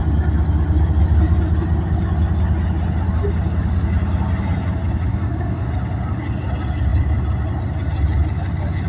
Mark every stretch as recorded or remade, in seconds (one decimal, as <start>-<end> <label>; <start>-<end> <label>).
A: 0.0-5.1 recorded; 5.1-5.7 remade; 5.7-8.9 recorded